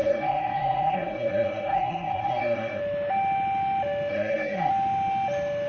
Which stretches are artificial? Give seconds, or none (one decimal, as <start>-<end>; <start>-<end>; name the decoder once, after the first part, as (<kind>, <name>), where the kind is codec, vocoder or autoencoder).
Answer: 0.0-2.8 (codec, SNAC); 4.1-4.7